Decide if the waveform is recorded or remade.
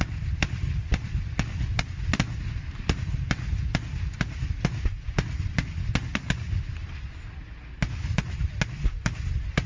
recorded